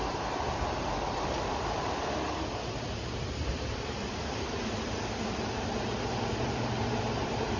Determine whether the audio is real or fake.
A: fake